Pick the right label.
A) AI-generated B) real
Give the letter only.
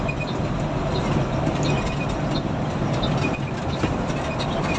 B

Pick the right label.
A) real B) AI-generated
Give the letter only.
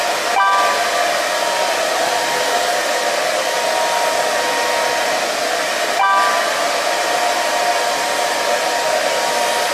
A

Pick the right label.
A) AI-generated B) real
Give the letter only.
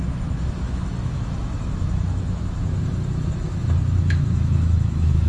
A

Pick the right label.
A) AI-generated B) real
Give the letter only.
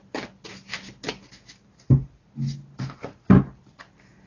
B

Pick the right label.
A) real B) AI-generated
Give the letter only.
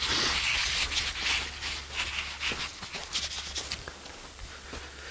A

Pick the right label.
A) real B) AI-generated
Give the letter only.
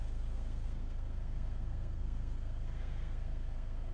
B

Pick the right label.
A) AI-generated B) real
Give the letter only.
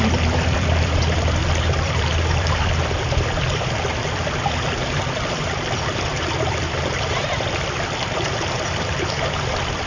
A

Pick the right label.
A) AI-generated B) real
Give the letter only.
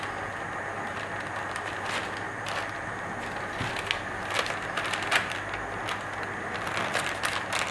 B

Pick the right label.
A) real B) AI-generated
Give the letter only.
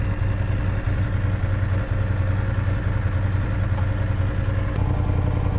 A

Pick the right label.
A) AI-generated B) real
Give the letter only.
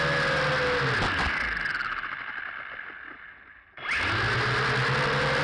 B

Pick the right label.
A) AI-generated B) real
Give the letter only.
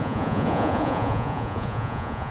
A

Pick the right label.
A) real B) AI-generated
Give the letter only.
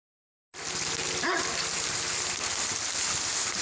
A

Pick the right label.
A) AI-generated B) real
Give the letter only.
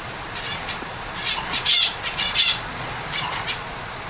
A